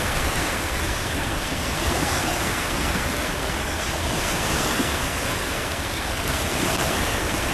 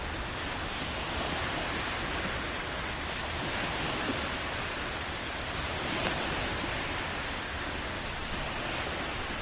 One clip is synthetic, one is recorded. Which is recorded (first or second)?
second